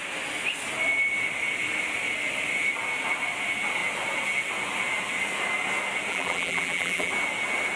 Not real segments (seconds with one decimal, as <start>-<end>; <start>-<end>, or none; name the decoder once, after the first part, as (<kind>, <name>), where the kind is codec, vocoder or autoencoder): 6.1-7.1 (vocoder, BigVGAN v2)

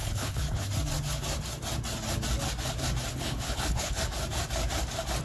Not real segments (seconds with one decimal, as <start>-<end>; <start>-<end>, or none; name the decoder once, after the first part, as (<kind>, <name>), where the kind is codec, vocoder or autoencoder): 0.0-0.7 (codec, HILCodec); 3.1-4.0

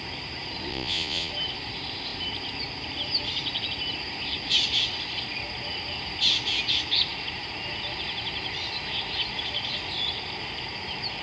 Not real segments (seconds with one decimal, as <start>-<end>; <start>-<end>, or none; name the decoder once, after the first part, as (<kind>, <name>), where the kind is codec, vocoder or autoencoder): 0.7-1.3 (vocoder, Vocos)

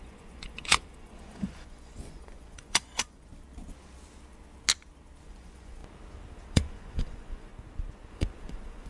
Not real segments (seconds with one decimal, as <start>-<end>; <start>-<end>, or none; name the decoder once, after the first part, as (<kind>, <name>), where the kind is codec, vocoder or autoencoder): 0.0-3.3 (vocoder, Vocos); 5.2-5.8; 6.5-7.5; 8.1-8.9